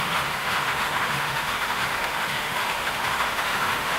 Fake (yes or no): yes